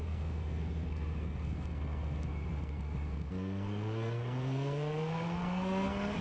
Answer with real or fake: fake